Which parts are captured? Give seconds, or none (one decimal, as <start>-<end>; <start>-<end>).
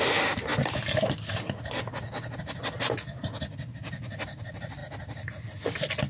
0.0-6.1